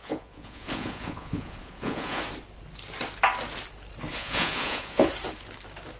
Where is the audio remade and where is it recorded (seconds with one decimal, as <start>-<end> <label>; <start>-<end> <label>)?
0.0-2.2 remade; 2.2-4.1 recorded; 4.1-5.1 remade; 5.1-6.0 recorded